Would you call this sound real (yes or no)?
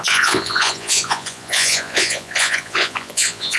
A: no